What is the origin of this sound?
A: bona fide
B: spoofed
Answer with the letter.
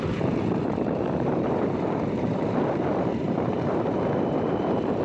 B